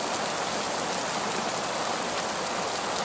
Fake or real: real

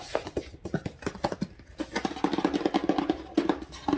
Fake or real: real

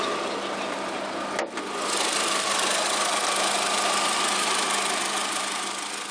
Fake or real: real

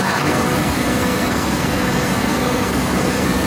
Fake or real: fake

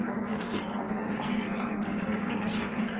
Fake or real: fake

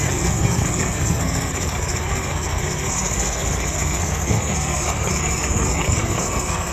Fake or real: fake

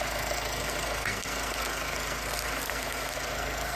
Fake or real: fake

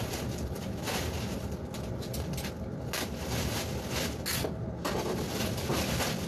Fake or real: real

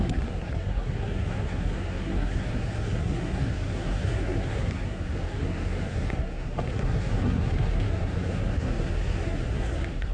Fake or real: fake